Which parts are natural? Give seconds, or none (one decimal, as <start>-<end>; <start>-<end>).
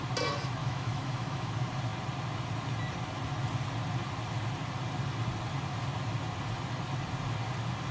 0.0-0.6; 1.5-7.9